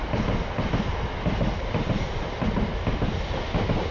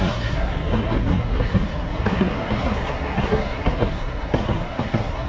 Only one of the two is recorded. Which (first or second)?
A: first